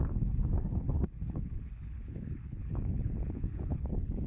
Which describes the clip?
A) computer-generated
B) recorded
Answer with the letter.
A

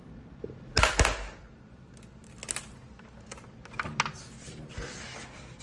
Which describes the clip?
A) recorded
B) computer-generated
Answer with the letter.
A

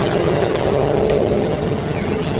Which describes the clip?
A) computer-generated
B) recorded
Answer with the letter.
A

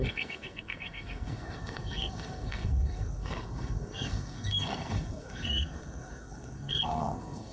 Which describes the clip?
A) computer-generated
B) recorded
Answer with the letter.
A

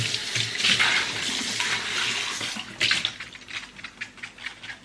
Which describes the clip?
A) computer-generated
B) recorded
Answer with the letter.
B